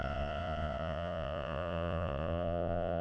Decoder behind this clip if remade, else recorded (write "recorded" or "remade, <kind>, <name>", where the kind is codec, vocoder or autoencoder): remade, vocoder, Vocos